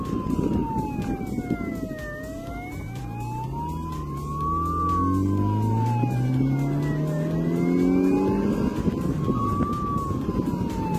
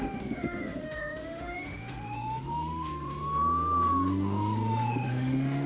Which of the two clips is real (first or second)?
first